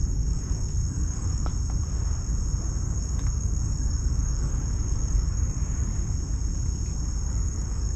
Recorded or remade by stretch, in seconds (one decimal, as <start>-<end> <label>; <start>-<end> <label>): 0.0-1.5 remade; 1.5-2.8 recorded; 2.8-5.9 remade; 5.9-7.3 recorded; 7.3-8.0 remade